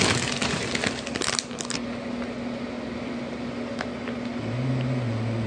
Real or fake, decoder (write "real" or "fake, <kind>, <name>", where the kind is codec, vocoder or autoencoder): real